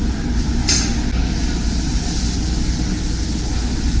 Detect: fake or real real